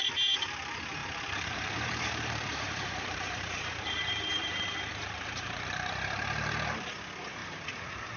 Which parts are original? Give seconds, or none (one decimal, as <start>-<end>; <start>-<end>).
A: 0.5-1.0; 5.9-7.4